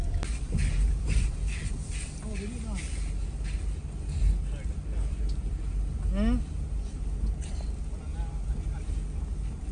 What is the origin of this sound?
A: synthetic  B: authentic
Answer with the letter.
B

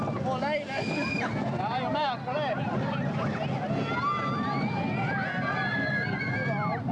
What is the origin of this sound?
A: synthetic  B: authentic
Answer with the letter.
B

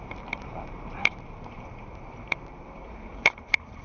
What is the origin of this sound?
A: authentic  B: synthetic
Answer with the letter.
B